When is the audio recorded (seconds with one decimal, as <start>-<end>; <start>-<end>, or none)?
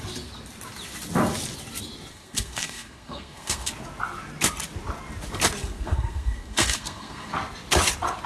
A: 0.0-2.1; 3.7-5.6; 7.3-8.3